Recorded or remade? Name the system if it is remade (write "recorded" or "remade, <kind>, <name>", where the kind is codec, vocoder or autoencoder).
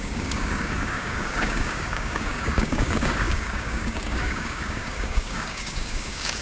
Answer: remade, codec, DAC